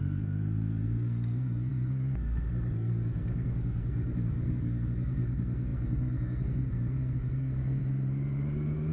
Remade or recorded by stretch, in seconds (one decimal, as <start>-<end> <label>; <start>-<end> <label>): 0.0-7.8 remade; 7.8-8.9 recorded